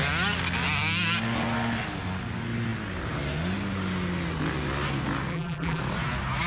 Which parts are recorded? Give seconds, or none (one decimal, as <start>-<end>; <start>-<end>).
0.0-5.3; 5.8-6.5